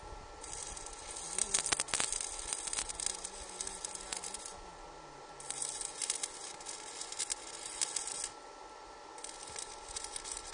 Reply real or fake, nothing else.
real